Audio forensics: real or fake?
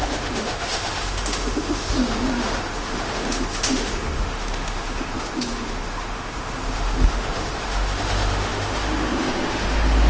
fake